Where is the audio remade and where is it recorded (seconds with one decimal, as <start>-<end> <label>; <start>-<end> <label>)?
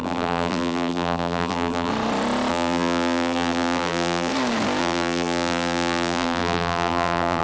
0.0-1.9 remade; 1.9-2.5 recorded; 2.5-4.3 remade; 4.3-4.8 recorded; 4.8-7.4 remade